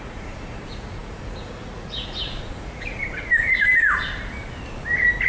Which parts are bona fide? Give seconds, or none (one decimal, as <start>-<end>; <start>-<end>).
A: 3.0-5.3